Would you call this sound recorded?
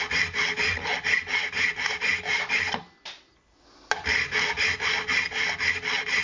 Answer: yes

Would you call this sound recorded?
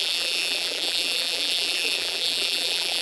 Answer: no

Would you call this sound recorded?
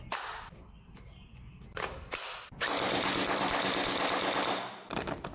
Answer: yes